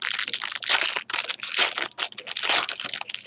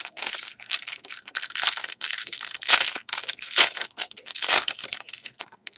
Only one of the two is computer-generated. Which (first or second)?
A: second